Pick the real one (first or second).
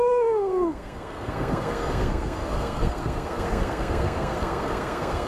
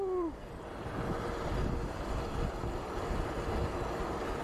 second